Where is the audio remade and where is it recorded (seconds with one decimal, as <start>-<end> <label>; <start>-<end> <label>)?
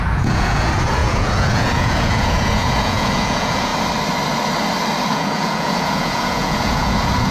0.0-3.7 remade; 3.7-5.1 recorded; 5.1-7.3 remade